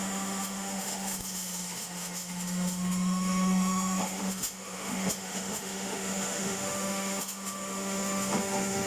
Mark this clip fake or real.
fake